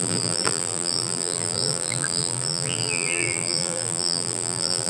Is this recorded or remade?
remade